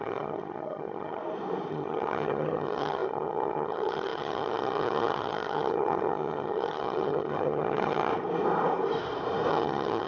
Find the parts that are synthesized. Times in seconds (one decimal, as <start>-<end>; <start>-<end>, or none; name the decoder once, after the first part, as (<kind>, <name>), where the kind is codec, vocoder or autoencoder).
0.0-1.2 (vocoder, HiFi-GAN); 1.7-8.1; 9.5-10.1